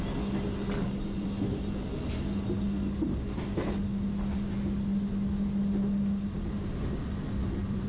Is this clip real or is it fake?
real